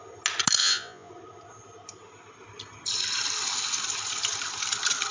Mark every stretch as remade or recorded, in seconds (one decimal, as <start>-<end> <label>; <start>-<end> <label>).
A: 0.0-0.6 recorded; 0.6-1.1 remade; 1.1-5.1 recorded